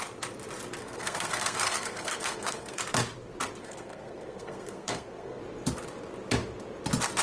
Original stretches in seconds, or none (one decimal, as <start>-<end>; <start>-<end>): 0.0-0.8; 2.8-3.6; 5.4-7.2